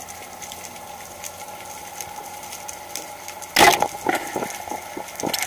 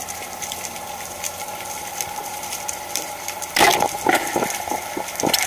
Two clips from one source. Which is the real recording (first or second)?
first